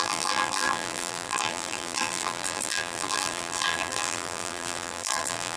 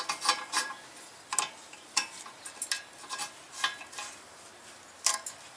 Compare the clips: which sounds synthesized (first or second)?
first